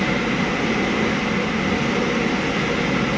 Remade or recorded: recorded